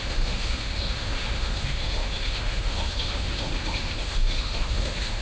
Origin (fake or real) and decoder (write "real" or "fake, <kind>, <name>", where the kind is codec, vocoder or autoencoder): fake, autoencoder, DAC-VAE